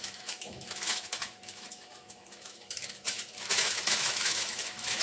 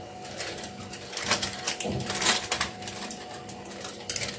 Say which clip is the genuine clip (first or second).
second